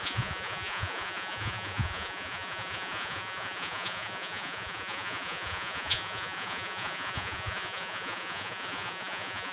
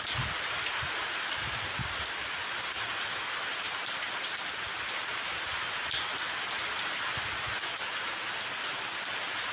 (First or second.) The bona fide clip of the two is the second